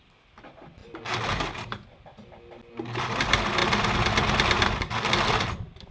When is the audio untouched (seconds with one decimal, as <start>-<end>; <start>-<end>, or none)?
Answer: 0.0-5.9